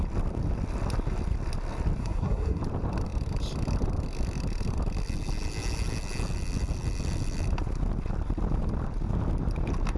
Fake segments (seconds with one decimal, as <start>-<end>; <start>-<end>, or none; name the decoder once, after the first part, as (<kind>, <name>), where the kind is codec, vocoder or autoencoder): 2.0-2.6 (codec, SNAC)